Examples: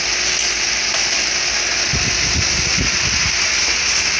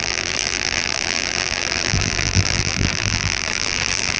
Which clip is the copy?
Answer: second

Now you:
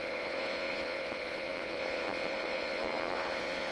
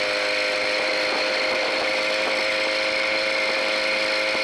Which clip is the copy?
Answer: first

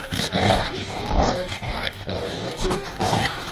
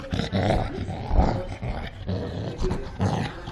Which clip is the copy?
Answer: first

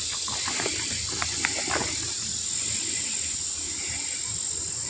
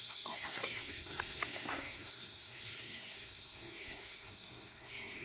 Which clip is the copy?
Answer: second